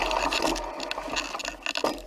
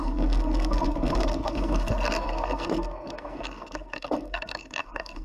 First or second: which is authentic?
first